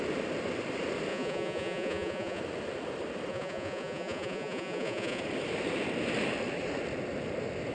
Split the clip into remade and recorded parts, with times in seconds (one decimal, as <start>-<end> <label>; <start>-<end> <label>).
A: 0.0-1.1 recorded; 1.1-2.4 remade; 2.4-3.3 recorded; 3.3-5.2 remade; 5.2-7.7 recorded